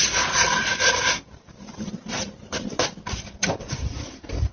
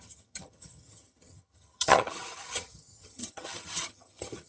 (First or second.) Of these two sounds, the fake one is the second